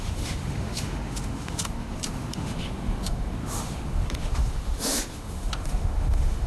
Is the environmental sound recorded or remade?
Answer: remade